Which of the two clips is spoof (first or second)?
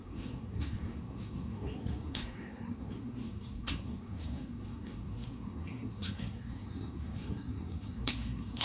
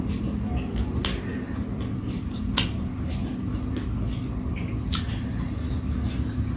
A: first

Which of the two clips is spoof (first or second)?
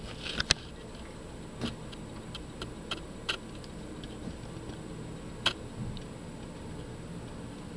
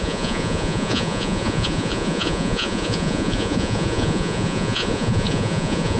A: second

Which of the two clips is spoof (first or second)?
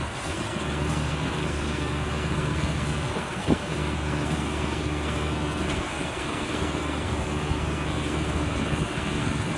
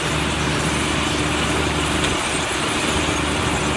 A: first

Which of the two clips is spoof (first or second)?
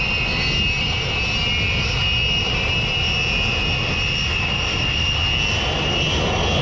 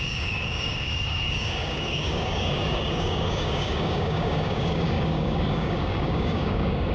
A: second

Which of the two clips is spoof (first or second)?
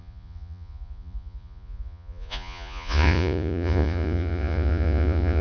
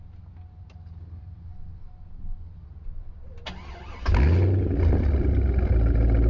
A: first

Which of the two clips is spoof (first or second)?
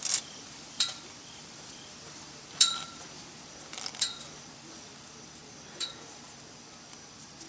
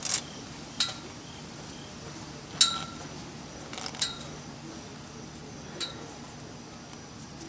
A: first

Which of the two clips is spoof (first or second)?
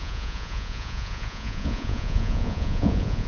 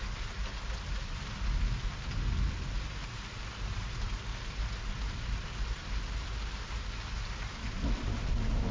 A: first